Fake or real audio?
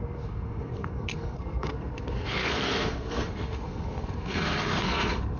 fake